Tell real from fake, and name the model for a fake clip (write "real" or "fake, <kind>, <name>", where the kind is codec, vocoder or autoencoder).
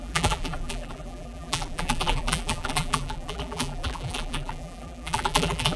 fake, vocoder, BigVGAN v2